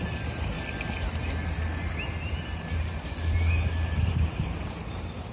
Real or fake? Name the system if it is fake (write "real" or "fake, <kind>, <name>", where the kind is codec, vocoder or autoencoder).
real